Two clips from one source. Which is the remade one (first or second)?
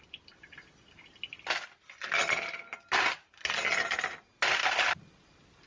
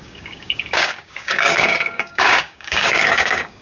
second